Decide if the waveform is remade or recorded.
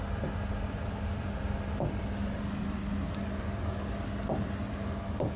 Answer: recorded